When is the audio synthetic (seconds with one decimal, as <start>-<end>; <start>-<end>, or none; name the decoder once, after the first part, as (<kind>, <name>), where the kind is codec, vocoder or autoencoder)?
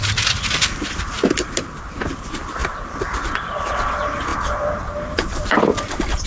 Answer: none